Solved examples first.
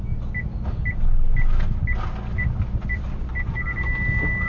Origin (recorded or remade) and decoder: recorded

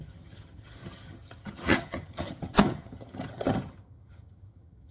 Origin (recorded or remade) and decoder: remade, vocoder, HiFi-GAN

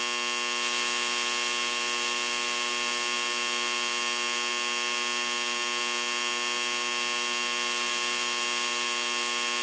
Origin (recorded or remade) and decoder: recorded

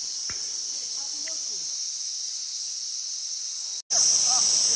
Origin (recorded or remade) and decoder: recorded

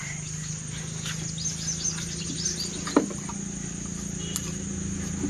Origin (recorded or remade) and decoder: recorded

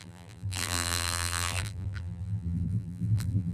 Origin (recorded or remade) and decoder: remade, vocoder, BigVGAN v2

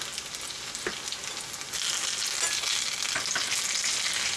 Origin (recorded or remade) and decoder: recorded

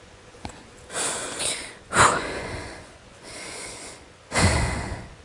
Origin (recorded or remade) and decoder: remade, vocoder, Vocos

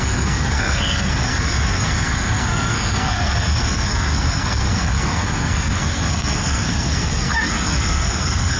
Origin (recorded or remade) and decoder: remade, codec, SNAC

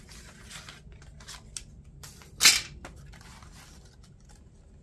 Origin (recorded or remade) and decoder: recorded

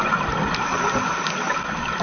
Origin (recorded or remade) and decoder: recorded